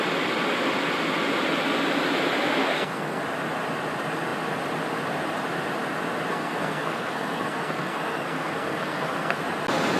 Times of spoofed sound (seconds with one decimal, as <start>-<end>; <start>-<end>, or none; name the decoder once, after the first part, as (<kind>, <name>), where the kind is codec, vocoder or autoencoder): 2.6-3.2 (codec, SNAC); 6.3-9.4